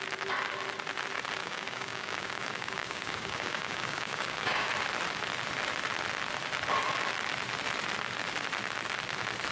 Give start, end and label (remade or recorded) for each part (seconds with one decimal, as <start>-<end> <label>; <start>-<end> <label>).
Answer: 0.0-1.4 recorded; 1.4-4.7 remade; 4.7-9.5 recorded